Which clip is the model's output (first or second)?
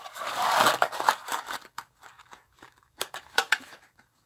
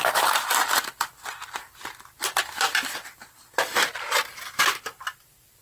first